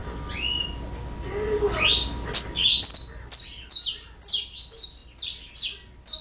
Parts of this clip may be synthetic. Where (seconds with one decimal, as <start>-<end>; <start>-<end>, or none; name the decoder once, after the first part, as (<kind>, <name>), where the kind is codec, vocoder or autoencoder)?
none